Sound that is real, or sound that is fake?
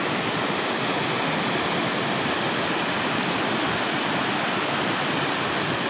real